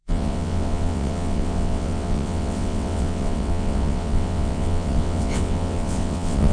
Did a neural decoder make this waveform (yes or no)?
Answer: yes